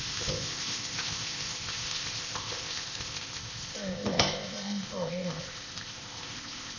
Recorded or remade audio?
remade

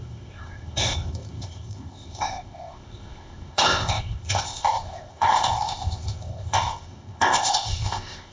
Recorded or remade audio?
remade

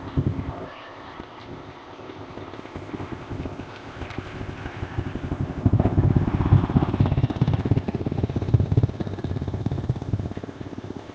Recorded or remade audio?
remade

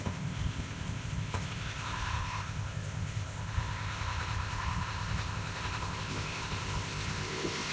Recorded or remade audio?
remade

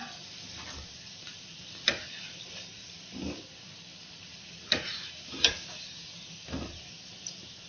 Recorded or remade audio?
recorded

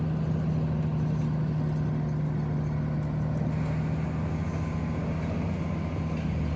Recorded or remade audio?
recorded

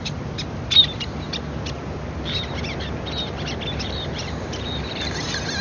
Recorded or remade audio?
recorded